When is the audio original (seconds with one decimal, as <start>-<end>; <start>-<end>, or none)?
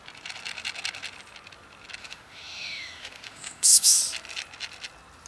0.0-2.0; 4.0-5.3